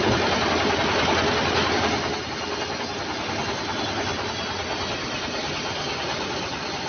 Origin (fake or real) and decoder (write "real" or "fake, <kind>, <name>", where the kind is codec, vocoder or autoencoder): real